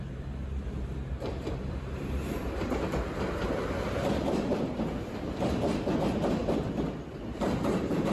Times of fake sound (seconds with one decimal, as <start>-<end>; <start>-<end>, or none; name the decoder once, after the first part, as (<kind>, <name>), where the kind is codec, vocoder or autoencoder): 0.0-6.4 (vocoder, BigVGAN v2); 7.1-8.1